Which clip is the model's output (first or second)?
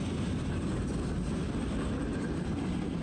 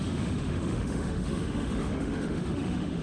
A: second